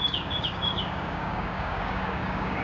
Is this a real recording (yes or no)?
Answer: no